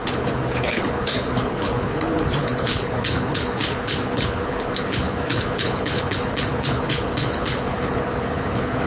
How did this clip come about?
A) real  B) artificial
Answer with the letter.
B